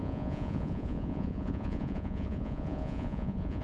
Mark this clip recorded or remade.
remade